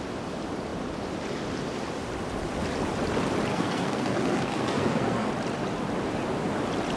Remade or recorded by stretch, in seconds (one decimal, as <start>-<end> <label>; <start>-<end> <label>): 0.0-3.5 recorded; 3.5-5.3 remade; 5.3-7.0 recorded

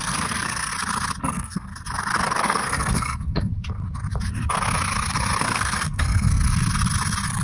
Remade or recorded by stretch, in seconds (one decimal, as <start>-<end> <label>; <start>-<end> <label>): 0.0-0.7 remade; 0.7-1.2 recorded; 1.2-1.7 remade; 1.7-2.3 recorded; 2.3-3.5 remade; 3.5-5.4 recorded; 5.4-6.4 remade; 6.4-7.4 recorded

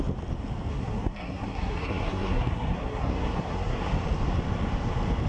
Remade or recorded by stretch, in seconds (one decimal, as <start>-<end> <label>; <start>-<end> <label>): 0.0-0.7 recorded; 0.7-3.9 remade; 3.9-5.3 recorded

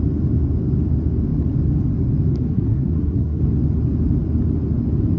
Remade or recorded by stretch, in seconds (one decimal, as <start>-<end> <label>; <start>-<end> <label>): 0.0-2.3 recorded; 2.3-3.4 remade; 3.4-5.2 recorded

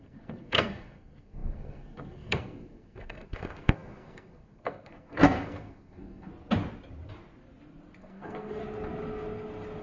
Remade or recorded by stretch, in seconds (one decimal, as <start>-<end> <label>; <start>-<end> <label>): 0.0-6.3 remade; 6.3-8.0 recorded; 8.0-8.6 remade; 8.6-9.8 recorded

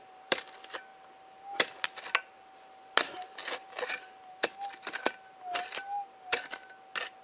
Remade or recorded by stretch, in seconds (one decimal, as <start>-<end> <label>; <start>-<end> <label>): 0.0-7.2 recorded